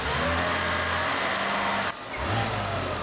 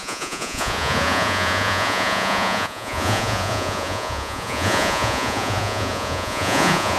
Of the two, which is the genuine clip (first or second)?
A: first